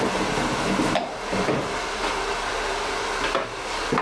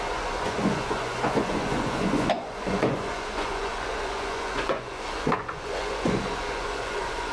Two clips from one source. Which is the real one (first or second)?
first